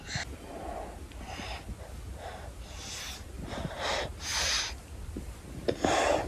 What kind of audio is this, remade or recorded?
recorded